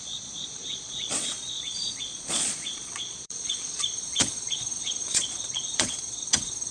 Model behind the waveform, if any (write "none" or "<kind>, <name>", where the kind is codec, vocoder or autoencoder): vocoder, Vocos